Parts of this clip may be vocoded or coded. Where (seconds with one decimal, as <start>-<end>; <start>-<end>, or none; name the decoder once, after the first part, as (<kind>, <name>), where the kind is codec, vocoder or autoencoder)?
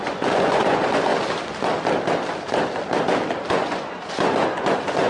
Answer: 0.0-1.1 (vocoder, Vocos); 3.5-5.1